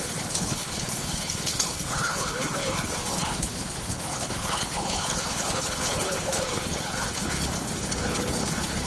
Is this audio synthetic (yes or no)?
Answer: yes